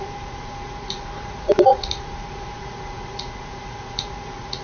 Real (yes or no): no